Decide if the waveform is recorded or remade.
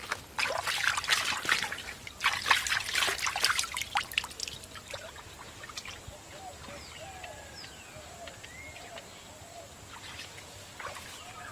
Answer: recorded